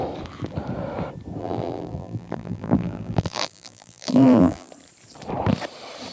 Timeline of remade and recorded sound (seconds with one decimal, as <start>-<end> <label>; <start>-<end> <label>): 0.0-1.4 recorded; 1.4-4.7 remade; 4.7-6.1 recorded